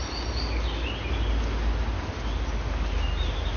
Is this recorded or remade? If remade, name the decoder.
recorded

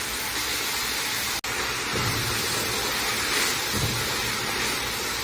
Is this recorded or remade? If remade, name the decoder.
recorded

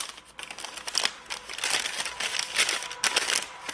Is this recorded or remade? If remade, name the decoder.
recorded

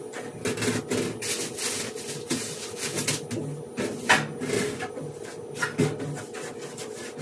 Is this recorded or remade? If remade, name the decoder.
recorded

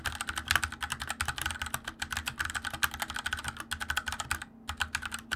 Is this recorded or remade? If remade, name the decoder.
recorded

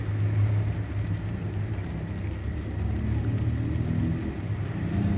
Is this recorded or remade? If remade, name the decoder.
recorded